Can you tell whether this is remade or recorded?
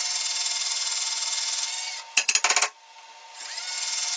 recorded